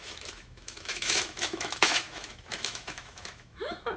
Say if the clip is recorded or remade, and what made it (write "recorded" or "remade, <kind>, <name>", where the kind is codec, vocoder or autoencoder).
remade, autoencoder, DAC-VAE